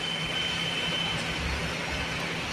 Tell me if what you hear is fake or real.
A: fake